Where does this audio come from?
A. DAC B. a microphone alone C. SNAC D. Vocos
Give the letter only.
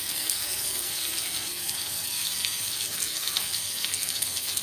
C